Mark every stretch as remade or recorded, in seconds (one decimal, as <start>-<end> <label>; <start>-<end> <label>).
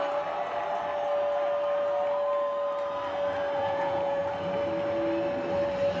0.0-3.6 recorded; 3.6-4.2 remade; 4.2-6.0 recorded